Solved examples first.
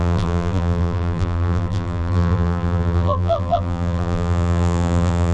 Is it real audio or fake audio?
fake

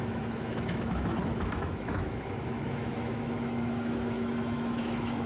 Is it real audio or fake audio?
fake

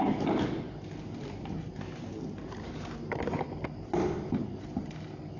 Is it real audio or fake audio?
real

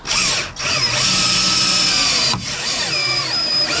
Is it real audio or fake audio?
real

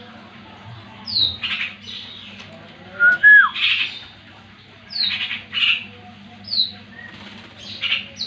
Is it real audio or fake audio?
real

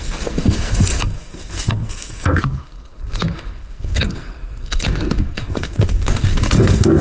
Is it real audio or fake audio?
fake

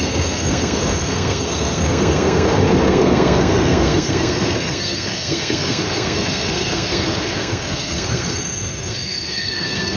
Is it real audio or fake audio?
fake